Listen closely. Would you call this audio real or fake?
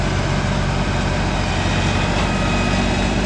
real